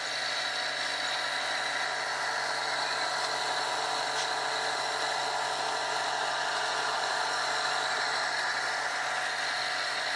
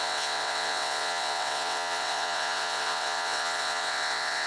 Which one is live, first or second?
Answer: first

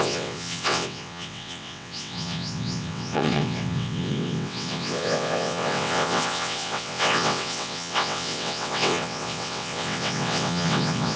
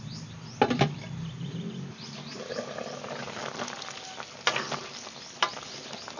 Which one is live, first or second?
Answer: second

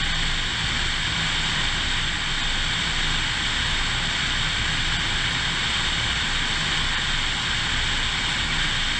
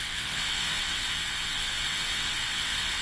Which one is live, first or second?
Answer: first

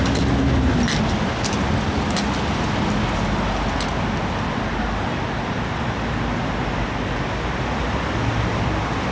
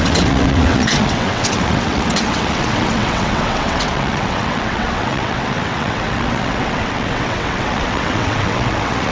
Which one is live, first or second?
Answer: first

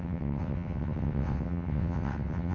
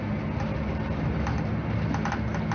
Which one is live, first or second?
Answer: second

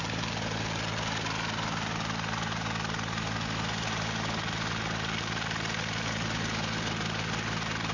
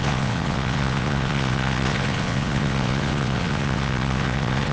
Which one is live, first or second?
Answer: first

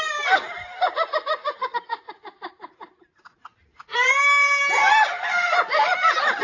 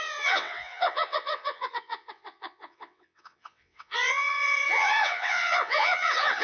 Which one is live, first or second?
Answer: first